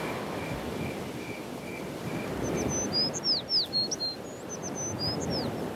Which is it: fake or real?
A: real